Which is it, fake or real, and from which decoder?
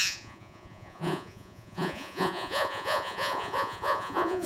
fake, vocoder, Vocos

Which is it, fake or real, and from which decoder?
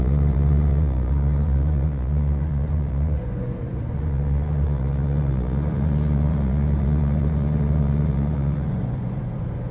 fake, vocoder, Vocos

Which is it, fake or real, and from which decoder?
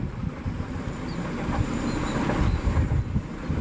real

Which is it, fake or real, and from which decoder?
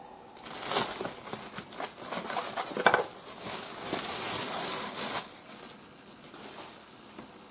real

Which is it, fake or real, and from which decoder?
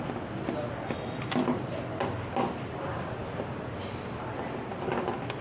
real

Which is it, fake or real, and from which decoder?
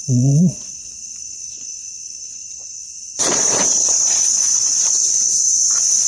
fake, vocoder, Vocos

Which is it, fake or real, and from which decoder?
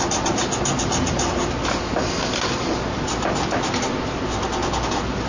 real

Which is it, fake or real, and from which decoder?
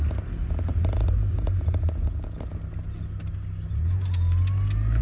real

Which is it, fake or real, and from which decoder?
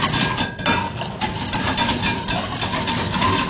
real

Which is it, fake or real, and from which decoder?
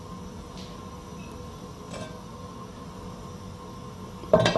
real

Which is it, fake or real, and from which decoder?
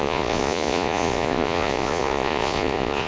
fake, vocoder, Vocos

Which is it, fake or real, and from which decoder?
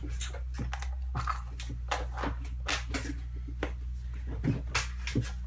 real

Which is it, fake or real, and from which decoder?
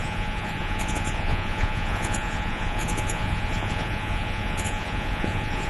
fake, vocoder, Vocos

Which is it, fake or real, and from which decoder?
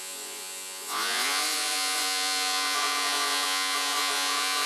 fake, vocoder, Vocos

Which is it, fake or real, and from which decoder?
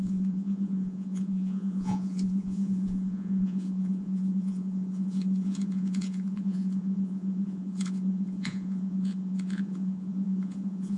fake, vocoder, Vocos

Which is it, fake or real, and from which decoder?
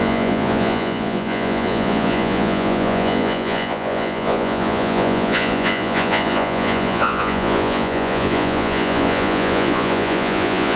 fake, vocoder, Vocos